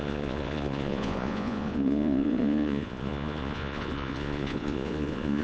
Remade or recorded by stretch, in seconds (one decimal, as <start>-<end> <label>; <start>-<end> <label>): 0.0-5.4 remade